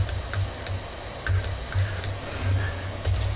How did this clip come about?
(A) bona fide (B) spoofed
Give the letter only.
A